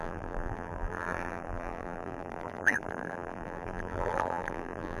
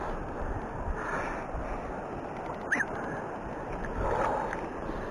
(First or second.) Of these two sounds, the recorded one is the second